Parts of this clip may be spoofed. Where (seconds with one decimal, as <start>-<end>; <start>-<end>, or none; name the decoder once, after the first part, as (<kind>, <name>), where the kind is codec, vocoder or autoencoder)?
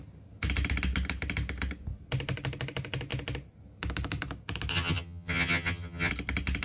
4.7-6.1 (vocoder, HiFi-GAN)